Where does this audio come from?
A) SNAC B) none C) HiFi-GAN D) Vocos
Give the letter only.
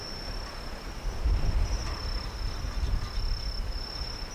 B